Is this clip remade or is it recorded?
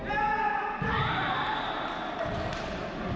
recorded